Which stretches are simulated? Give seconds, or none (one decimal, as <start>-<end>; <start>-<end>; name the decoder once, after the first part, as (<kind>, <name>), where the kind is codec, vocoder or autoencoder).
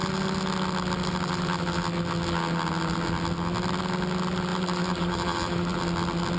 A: 4.5-5.8 (vocoder, BigVGAN v2)